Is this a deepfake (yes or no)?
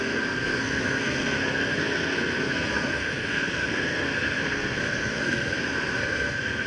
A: yes